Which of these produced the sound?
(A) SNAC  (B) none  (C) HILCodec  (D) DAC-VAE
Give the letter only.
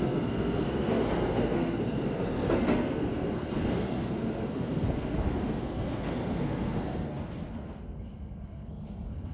A